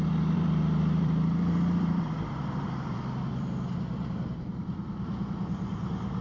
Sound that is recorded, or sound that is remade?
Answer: remade